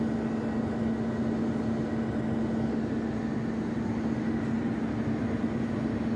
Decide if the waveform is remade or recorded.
recorded